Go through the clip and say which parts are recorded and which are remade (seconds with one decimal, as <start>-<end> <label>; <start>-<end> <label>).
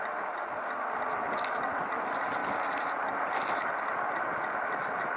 0.0-5.2 recorded